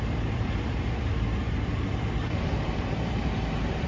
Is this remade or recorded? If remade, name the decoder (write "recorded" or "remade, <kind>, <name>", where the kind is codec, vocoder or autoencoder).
remade, vocoder, BigVGAN v2